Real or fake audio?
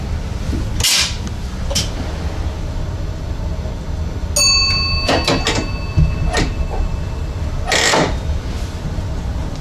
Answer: real